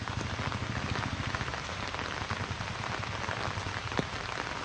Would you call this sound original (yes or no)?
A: yes